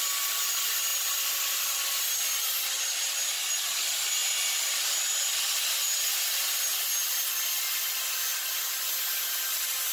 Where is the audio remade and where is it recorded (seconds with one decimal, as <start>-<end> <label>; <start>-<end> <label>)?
0.0-9.9 recorded